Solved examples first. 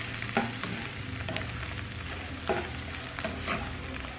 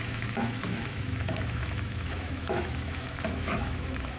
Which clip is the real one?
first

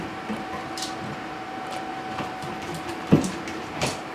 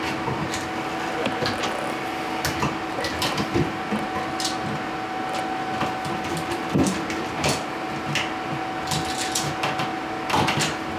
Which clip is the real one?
second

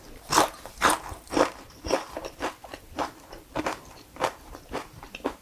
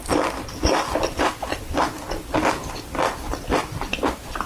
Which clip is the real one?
second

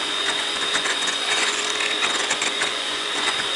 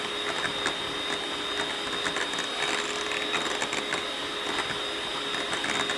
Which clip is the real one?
second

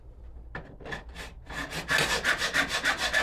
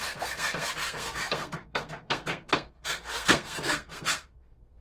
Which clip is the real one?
first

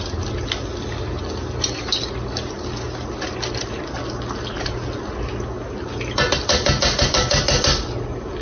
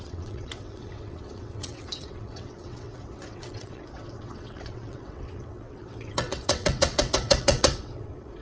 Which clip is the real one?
first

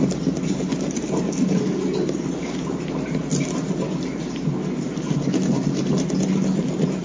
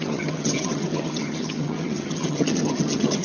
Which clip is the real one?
first